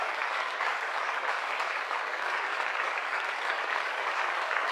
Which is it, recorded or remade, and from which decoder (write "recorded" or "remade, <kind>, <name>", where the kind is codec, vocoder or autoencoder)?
remade, codec, DAC